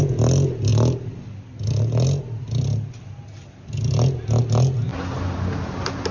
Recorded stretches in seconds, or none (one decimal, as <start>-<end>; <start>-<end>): 0.0-6.1

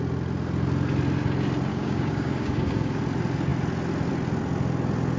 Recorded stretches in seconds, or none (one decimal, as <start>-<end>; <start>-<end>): 0.0-1.7; 3.0-5.2

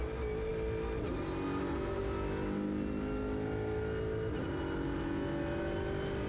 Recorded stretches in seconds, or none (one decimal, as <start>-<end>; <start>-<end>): 0.0-6.3

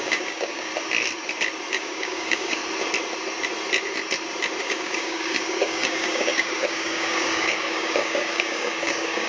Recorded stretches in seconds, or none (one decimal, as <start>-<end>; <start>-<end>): 0.7-1.7; 2.6-4.6

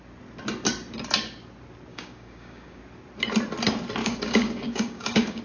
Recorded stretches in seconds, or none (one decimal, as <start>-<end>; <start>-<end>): 0.0-1.9; 2.8-4.0

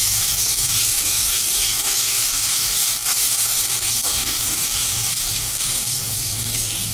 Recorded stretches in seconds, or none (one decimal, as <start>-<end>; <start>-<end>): none

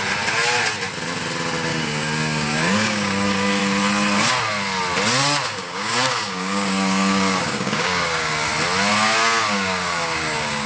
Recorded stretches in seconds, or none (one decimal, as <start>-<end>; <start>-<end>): 0.0-1.7; 3.6-5.5; 8.5-8.9